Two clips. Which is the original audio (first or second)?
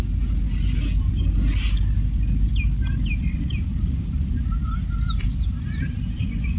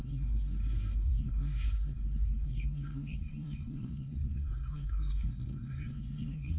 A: first